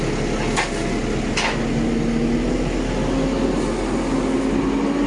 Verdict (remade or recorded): recorded